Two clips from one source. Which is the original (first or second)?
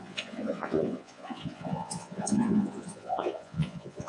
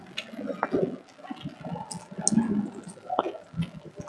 second